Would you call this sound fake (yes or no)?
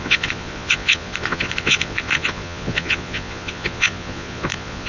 yes